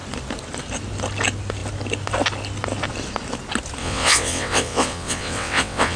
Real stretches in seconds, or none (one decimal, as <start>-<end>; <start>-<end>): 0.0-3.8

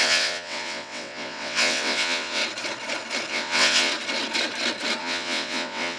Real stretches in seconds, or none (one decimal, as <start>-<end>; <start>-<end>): 2.4-3.3; 3.9-5.0

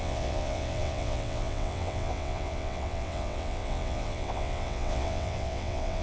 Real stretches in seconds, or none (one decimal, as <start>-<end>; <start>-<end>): none

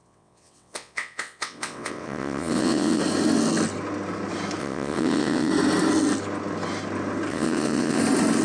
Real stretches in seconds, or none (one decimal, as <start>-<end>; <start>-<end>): 3.0-4.6; 5.5-7.3; 8.0-8.4

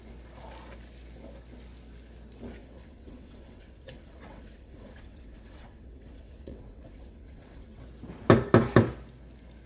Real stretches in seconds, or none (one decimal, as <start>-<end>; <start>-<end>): 0.0-2.6; 7.8-9.7

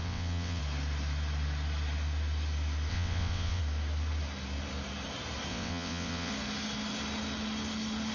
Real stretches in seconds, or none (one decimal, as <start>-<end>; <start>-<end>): 0.6-2.9; 3.6-5.5; 6.3-8.1

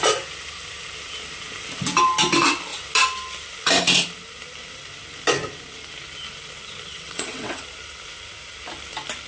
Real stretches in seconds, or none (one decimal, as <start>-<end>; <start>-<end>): 0.0-6.9; 7.6-9.3